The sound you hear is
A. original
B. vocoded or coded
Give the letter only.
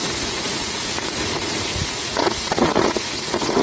B